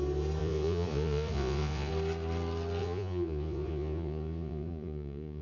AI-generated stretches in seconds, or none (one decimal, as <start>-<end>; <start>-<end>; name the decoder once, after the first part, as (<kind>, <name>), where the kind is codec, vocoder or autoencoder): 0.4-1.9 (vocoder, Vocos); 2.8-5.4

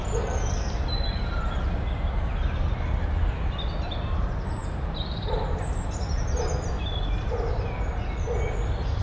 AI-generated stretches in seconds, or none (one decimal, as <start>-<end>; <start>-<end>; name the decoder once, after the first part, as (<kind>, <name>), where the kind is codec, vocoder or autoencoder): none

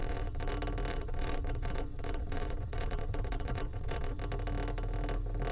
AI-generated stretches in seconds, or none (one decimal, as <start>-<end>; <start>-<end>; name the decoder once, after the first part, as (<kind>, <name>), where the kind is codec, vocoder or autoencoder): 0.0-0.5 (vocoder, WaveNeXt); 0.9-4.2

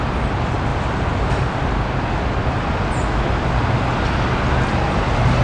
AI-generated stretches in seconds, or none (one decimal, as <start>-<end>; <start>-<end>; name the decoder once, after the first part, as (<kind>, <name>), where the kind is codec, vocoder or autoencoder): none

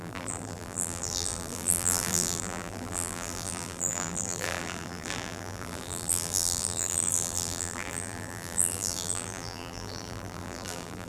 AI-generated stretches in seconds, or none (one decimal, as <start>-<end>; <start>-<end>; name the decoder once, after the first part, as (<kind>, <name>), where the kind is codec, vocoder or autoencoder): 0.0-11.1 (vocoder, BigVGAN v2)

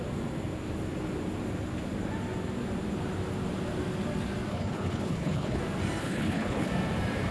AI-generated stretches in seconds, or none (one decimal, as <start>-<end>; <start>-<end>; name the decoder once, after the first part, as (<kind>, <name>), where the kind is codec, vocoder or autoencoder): 4.5-5.6 (codec, HILCodec); 6.0-6.7

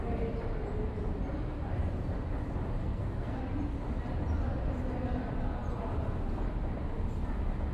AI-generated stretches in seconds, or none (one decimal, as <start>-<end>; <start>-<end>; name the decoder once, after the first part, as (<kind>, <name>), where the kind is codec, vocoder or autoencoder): 2.8-3.4 (codec, SNAC)